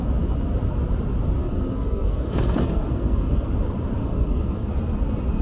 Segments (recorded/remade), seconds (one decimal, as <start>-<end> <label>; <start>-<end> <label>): 0.0-1.4 recorded; 1.4-3.5 remade; 3.5-4.0 recorded; 4.0-4.7 remade; 4.7-5.4 recorded